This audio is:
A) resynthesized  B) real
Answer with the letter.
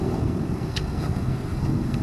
A